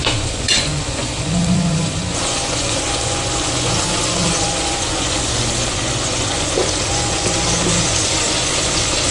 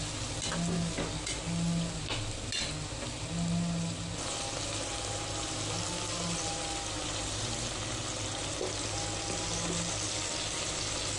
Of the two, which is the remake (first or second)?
first